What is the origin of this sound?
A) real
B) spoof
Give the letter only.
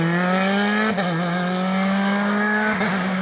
A